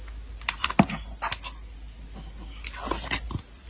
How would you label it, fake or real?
real